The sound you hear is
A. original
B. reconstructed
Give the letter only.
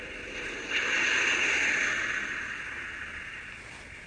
A